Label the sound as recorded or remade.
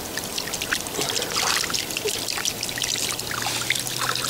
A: recorded